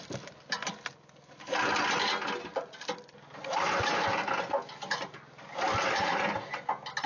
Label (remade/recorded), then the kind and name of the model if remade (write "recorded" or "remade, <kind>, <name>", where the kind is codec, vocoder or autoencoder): recorded